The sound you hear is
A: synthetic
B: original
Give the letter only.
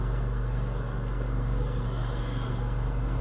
A